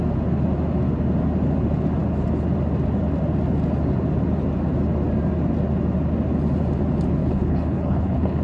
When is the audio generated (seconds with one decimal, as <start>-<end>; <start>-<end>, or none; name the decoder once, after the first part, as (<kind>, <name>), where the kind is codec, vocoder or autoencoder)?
7.2-8.4 (codec, HILCodec)